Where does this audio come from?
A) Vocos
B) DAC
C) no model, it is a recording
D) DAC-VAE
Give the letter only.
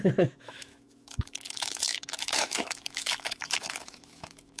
D